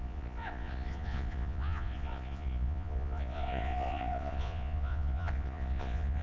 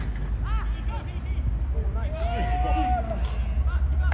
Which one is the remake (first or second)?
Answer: first